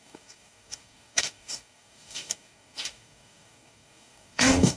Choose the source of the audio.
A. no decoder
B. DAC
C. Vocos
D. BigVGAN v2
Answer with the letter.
B